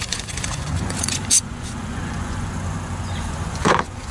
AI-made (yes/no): yes